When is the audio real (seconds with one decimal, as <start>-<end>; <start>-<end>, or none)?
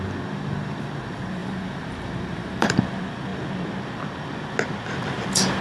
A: 0.0-1.4; 2.8-5.6